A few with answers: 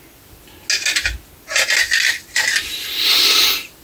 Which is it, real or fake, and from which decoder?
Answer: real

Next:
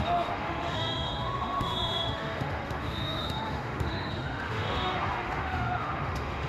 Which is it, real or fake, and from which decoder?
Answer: fake, autoencoder, DAC-VAE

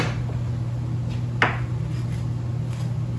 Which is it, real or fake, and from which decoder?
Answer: real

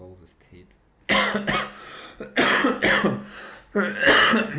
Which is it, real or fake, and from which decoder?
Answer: real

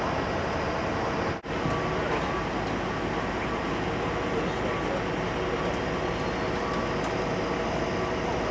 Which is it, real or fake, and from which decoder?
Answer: real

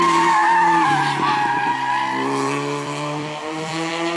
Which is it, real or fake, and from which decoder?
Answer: fake, vocoder, BigVGAN v2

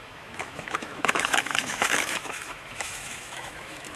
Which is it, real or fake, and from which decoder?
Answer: fake, autoencoder, DAC-VAE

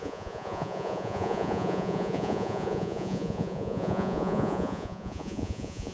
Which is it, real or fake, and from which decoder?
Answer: fake, vocoder, Vocos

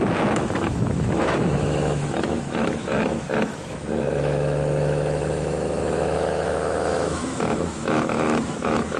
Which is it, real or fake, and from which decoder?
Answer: fake, autoencoder, DAC-VAE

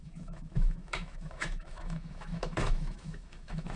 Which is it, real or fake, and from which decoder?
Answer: fake, autoencoder, DAC-VAE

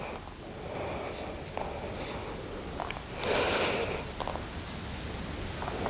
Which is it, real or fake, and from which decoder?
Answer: real